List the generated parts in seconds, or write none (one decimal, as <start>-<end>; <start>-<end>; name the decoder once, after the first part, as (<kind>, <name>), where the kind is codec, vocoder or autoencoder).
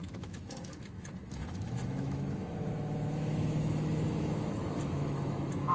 0.0-5.7 (autoencoder, DAC-VAE)